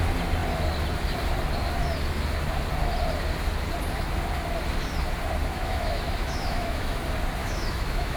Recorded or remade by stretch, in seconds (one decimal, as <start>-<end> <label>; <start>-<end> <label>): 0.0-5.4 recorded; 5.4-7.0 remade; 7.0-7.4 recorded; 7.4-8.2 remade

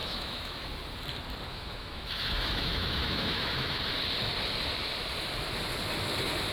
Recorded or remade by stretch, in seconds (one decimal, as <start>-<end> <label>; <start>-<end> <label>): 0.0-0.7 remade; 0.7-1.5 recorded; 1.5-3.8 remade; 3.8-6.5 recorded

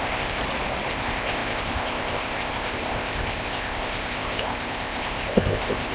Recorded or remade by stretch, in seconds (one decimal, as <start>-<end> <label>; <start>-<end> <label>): 0.0-0.4 remade; 0.4-0.9 recorded; 0.9-5.9 remade

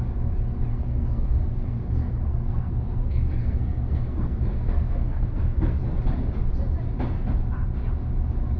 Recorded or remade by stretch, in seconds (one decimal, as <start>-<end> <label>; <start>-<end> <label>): 0.0-0.7 recorded; 0.7-5.8 remade; 5.8-8.6 recorded